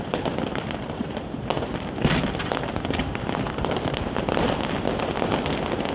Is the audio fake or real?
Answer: real